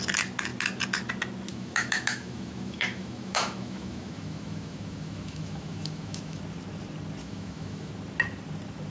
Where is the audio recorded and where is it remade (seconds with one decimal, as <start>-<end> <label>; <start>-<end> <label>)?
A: 0.0-1.5 recorded; 1.5-6.4 remade; 6.4-7.2 recorded; 7.2-7.9 remade; 7.9-8.9 recorded